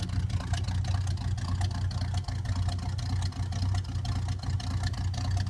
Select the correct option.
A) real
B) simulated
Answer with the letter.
A